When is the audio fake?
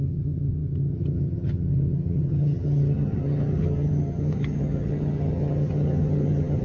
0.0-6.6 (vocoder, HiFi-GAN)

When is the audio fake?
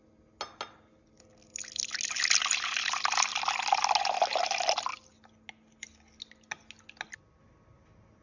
none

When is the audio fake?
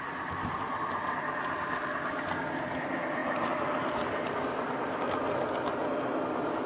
none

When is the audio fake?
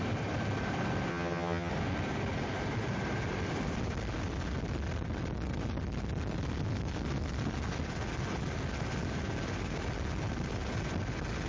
1.1-1.7 (vocoder, HiFi-GAN)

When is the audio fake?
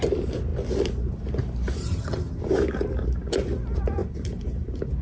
1.8-2.4 (vocoder, HiFi-GAN)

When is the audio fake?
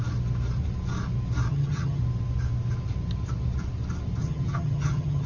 1.5-2.0 (vocoder, HiFi-GAN); 4.2-5.3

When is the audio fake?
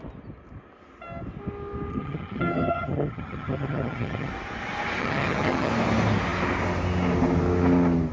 1.9-4.3 (vocoder, HiFi-GAN); 5.0-5.7